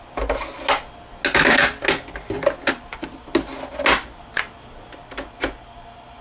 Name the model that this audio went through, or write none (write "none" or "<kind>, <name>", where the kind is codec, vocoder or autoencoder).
none